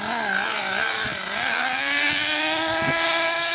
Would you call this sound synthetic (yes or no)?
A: no